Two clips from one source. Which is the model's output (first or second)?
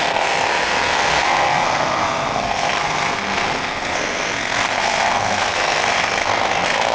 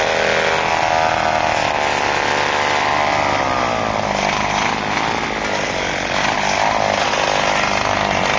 first